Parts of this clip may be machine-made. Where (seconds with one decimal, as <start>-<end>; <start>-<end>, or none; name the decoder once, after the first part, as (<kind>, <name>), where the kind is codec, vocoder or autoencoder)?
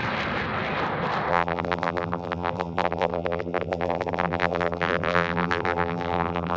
1.3-6.6 (vocoder, BigVGAN v2)